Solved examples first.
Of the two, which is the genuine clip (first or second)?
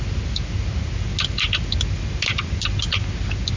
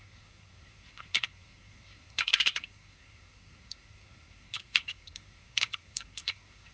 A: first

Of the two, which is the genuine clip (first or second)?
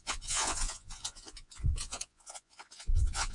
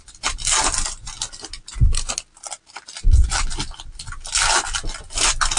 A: second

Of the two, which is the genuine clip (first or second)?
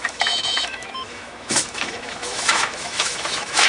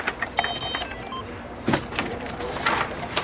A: second